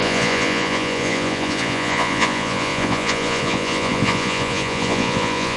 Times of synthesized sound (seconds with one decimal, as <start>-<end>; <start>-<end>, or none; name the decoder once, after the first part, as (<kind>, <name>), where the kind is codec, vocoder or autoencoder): 0.0-5.6 (vocoder, Vocos)